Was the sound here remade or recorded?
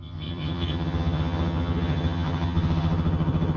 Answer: remade